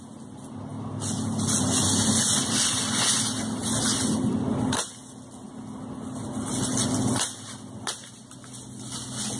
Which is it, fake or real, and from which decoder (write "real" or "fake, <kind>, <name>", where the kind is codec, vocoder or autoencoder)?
real